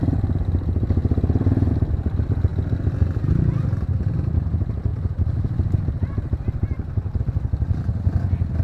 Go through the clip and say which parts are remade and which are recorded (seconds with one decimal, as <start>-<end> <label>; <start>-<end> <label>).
0.0-4.9 recorded; 4.9-7.2 remade; 7.2-8.6 recorded